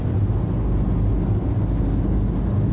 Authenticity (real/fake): real